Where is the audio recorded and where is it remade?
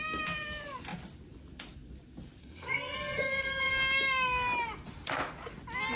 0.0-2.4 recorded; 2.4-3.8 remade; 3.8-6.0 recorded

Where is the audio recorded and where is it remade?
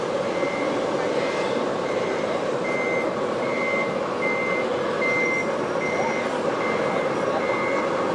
0.0-1.7 recorded; 1.7-2.7 remade; 2.7-8.1 recorded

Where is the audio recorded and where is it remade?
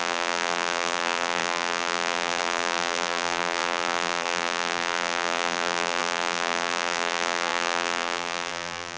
0.0-9.0 remade